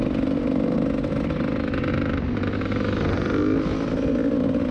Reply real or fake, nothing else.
real